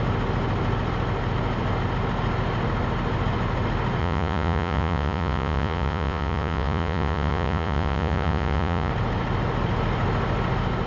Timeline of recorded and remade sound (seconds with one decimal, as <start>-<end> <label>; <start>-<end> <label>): 0.0-4.0 recorded; 4.0-8.9 remade; 8.9-10.9 recorded